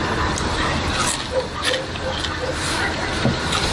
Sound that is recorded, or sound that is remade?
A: recorded